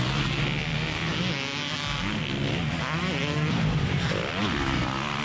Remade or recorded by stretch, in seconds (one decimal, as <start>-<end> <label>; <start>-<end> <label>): 0.0-5.2 recorded

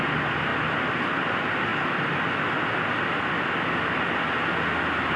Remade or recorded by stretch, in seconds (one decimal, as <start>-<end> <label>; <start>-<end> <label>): 0.0-5.2 recorded

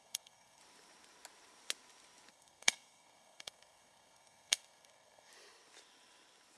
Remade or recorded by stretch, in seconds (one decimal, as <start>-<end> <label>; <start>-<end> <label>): 0.0-0.6 remade; 0.6-2.3 recorded; 2.3-5.3 remade; 5.3-6.6 recorded

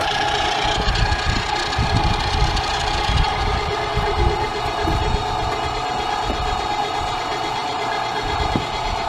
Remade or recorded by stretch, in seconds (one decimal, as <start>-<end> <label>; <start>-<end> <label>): 0.0-9.1 recorded